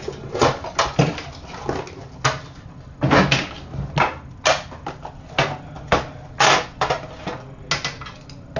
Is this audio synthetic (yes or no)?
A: no